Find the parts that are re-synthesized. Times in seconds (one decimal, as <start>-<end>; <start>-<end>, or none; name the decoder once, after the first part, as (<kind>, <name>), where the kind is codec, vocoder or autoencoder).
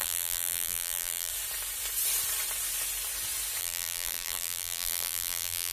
0.0-1.3 (vocoder, BigVGAN v2); 3.6-5.7